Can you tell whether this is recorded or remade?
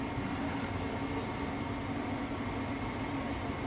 recorded